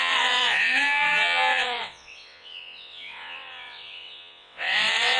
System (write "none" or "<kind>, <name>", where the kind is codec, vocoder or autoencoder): vocoder, WaveNeXt